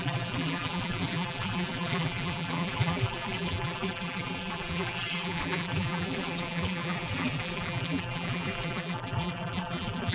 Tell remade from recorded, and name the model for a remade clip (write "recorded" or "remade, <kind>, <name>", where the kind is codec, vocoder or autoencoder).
remade, vocoder, BigVGAN v2